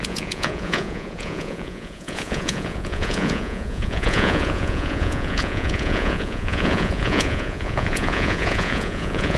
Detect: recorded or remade remade